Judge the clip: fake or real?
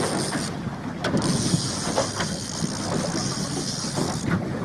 real